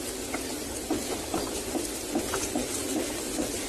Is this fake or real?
fake